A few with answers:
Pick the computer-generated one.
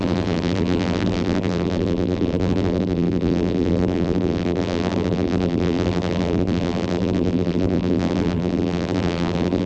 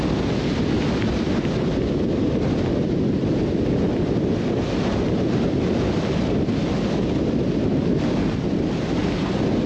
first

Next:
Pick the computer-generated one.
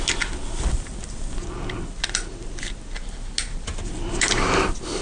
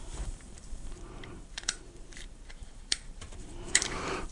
second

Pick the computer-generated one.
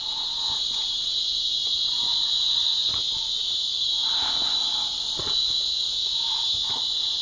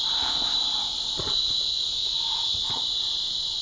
second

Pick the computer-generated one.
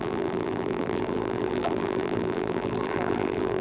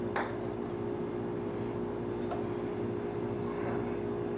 first